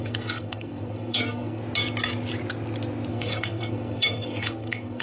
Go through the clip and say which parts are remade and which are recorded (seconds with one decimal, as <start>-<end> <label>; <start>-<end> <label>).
0.0-1.6 remade; 1.6-3.1 recorded; 3.1-5.0 remade